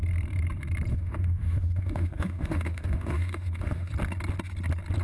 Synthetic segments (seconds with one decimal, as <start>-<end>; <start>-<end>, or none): 0.9-3.9